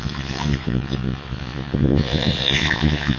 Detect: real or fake fake